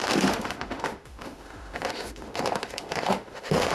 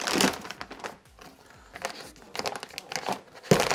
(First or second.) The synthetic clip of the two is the first